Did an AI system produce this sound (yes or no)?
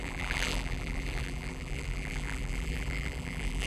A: yes